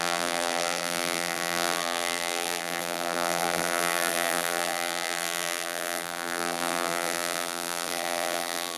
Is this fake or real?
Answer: fake